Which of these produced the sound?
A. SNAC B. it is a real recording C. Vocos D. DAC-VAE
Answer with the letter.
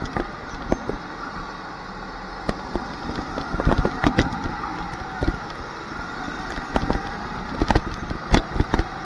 B